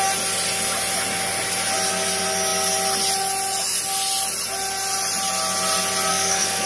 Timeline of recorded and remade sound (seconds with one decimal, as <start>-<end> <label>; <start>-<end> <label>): 0.0-6.1 recorded; 6.1-6.7 remade